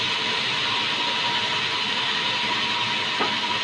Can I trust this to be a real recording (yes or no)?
yes